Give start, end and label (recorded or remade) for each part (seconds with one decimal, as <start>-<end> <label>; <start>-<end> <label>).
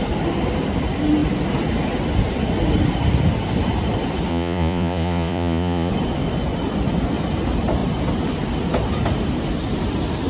0.0-4.3 recorded; 4.3-5.9 remade; 5.9-10.3 recorded